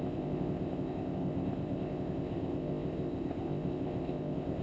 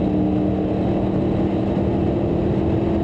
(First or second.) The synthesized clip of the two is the first